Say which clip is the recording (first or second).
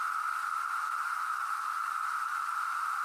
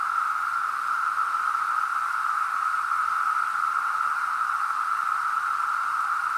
second